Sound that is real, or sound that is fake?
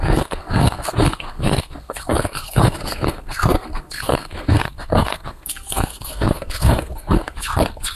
fake